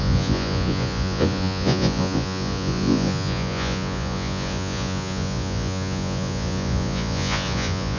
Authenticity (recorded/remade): remade